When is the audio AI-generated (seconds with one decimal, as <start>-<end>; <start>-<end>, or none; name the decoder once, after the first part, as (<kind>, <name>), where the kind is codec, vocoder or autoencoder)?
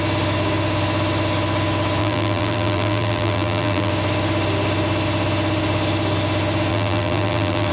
2.0-3.9 (vocoder, BigVGAN v2); 6.7-7.7